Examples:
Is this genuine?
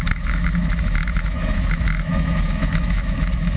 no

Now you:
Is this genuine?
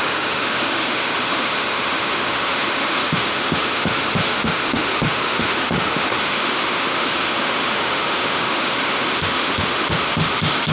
no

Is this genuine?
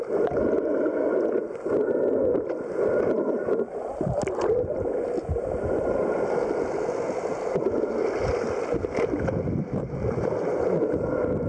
yes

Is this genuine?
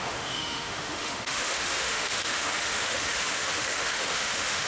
no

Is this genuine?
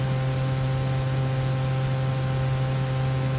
yes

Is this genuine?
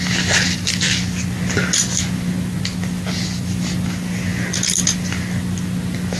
yes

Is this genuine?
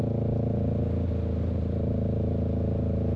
yes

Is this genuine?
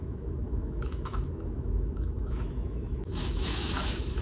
no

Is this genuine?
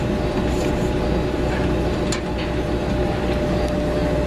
yes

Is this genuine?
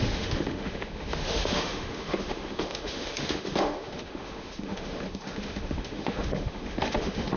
no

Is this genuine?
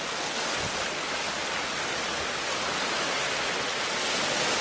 yes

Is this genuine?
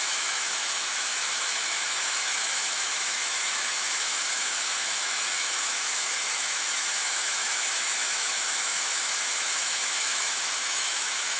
no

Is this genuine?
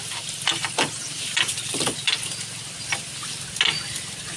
yes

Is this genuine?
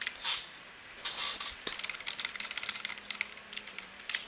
yes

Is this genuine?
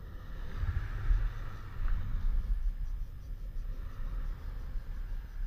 yes